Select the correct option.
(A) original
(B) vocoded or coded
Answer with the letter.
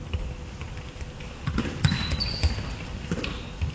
A